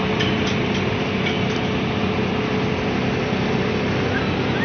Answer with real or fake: real